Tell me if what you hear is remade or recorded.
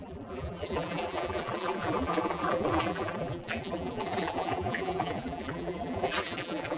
remade